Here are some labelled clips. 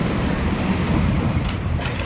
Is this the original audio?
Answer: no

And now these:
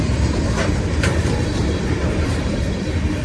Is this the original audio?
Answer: no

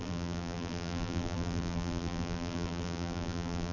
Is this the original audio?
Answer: no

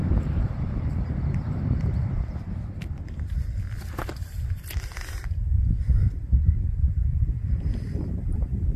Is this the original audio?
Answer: no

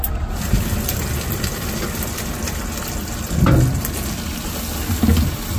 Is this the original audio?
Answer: yes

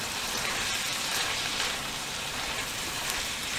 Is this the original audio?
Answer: no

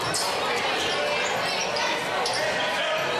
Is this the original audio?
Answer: yes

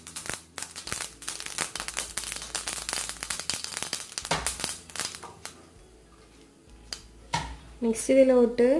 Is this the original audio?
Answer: yes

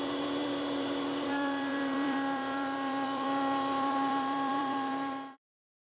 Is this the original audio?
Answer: no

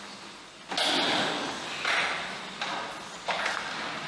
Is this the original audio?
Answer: yes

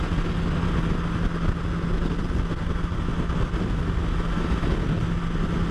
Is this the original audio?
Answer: yes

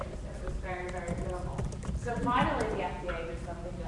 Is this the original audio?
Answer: no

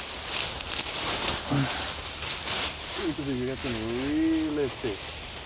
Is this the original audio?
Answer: yes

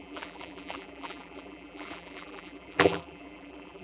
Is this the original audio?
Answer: no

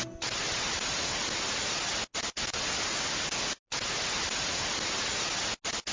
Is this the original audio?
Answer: yes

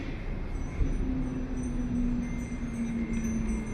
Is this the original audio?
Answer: yes